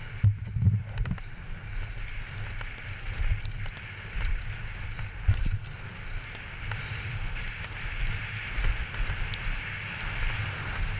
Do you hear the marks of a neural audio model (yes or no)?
no